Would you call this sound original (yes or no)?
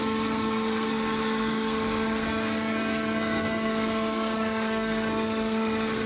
no